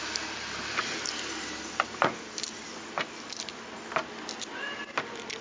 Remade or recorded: recorded